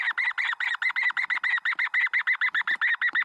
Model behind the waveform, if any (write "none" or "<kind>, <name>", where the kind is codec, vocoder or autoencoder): none